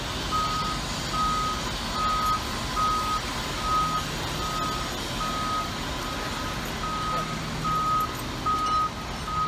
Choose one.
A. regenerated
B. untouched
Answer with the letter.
B